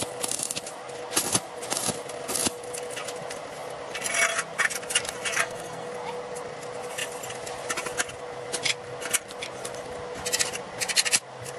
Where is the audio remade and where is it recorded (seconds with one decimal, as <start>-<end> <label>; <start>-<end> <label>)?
0.0-5.3 recorded; 5.3-5.9 remade; 5.9-11.6 recorded